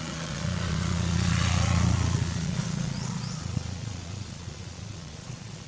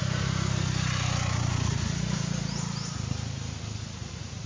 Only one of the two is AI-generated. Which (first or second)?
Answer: first